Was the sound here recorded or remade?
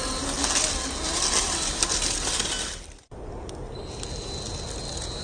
recorded